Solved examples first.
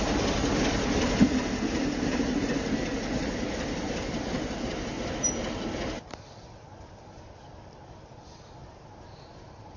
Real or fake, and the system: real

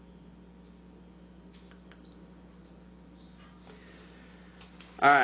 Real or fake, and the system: real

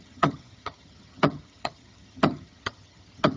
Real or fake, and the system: fake, vocoder, HiFi-GAN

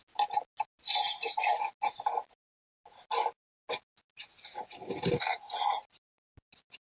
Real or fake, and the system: real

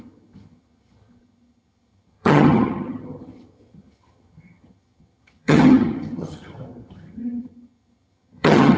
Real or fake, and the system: fake, vocoder, HiFi-GAN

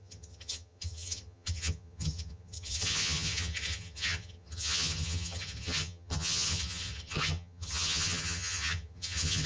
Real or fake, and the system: fake, vocoder, HiFi-GAN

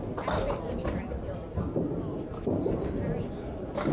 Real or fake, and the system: real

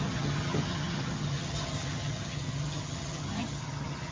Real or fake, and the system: fake, vocoder, HiFi-GAN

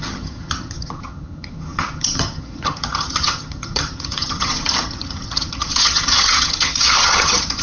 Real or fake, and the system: fake, vocoder, HiFi-GAN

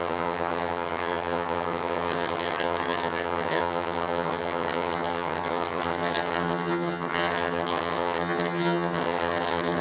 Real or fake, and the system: fake, vocoder, HiFi-GAN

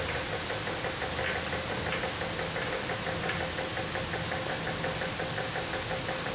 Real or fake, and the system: real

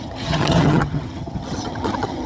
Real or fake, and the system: fake, vocoder, HiFi-GAN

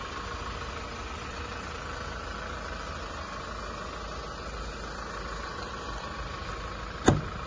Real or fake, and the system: real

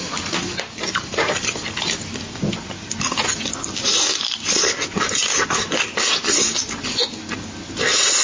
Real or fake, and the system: real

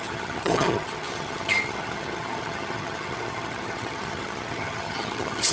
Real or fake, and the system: fake, vocoder, HiFi-GAN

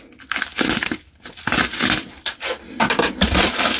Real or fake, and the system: real